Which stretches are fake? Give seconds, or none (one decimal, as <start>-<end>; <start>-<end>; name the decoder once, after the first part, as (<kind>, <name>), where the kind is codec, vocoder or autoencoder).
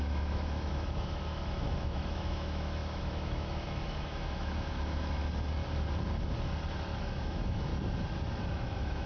0.0-5.2 (autoencoder, DAC-VAE); 7.0-7.7; 8.4-9.1